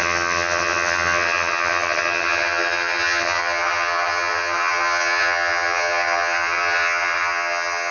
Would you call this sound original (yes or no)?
no